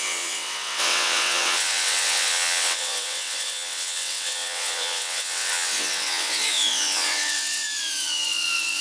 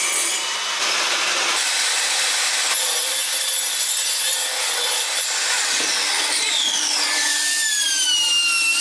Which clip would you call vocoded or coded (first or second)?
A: first